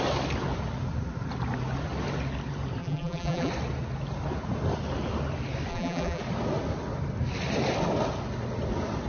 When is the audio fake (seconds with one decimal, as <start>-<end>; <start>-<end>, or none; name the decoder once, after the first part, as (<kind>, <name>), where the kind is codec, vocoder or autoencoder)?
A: 2.8-3.5 (vocoder, BigVGAN v2); 5.7-6.2